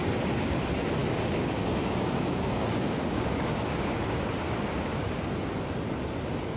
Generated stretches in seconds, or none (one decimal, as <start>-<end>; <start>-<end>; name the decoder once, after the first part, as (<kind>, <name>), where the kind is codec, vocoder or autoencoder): 0.0-0.6 (codec, DAC); 1.0-5.0